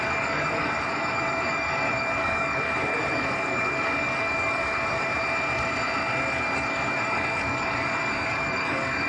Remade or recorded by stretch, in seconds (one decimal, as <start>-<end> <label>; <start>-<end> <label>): 0.0-5.1 remade; 5.1-6.3 recorded; 6.3-9.1 remade